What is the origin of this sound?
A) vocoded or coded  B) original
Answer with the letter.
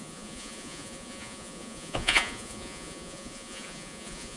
A